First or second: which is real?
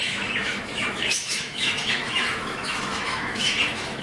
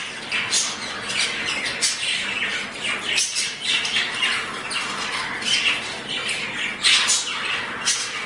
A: second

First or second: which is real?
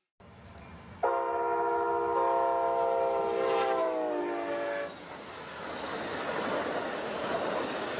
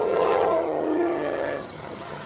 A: first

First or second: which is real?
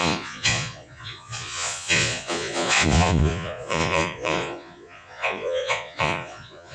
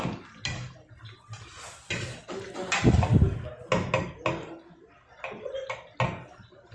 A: second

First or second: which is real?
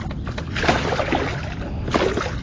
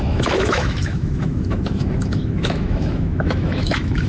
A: first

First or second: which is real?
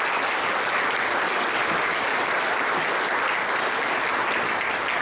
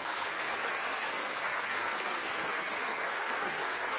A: first